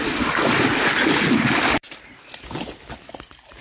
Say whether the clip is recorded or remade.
recorded